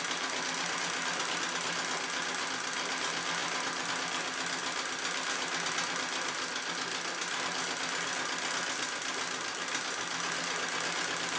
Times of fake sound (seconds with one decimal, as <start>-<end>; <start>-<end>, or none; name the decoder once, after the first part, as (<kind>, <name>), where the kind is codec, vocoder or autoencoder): none